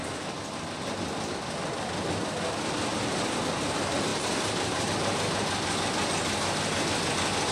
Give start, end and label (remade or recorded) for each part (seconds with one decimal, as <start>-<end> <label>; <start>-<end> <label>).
0.0-2.9 recorded; 2.9-3.5 remade; 3.5-4.1 recorded; 4.1-4.9 remade; 4.9-7.5 recorded